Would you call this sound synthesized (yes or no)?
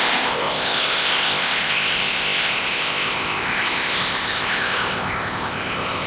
yes